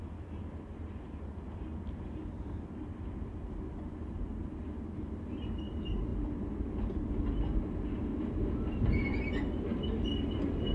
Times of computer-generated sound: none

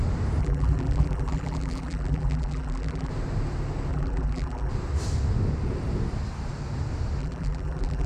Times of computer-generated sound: 0.4-3.1 (vocoder, BigVGAN v2); 3.9-4.7; 7.2-8.1

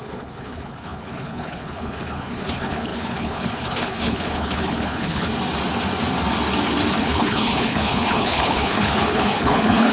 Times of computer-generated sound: 0.0-5.3 (codec, HILCodec); 7.0-9.9

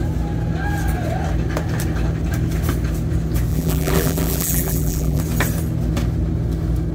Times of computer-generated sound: 3.5-5.2 (vocoder, BigVGAN v2)

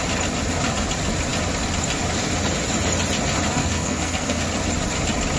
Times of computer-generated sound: 3.6-4.4 (codec, SNAC)

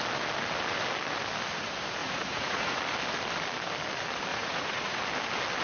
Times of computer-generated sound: 2.0-2.8 (vocoder, Vocos); 4.3-5.0

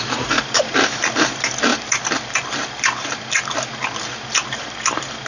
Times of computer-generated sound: none

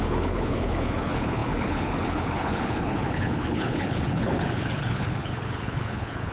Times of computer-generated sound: 0.0-6.3 (codec, HILCodec)